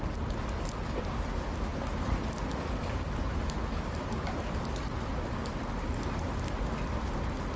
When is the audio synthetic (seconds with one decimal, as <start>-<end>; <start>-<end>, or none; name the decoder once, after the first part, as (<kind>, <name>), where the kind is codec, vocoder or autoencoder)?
none